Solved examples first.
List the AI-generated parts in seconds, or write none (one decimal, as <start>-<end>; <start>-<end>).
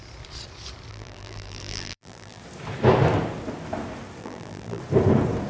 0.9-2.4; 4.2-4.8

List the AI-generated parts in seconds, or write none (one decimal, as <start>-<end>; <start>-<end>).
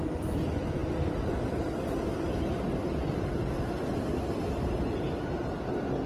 none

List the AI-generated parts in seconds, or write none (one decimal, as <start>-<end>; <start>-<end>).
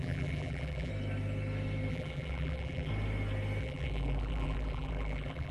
0.0-0.9; 1.9-2.9; 3.6-5.5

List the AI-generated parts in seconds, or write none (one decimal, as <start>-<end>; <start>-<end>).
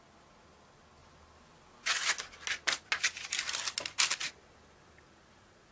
none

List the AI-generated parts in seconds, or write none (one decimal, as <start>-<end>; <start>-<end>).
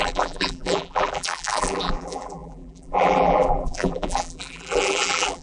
0.0-5.4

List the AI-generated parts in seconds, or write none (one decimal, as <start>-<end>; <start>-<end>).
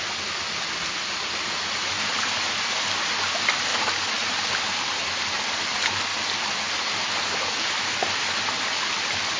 none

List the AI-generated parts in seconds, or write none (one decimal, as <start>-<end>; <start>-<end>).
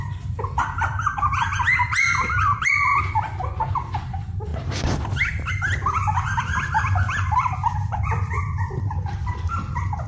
0.0-2.9; 3.7-4.5; 6.4-10.1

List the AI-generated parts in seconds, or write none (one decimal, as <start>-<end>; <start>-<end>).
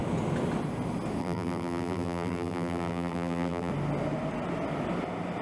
1.2-3.7